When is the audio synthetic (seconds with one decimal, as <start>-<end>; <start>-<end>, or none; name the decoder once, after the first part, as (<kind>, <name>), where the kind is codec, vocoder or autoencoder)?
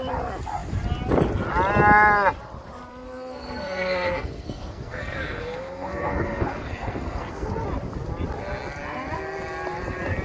2.9-7.5 (codec, SNAC)